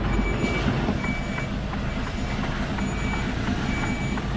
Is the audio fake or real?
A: real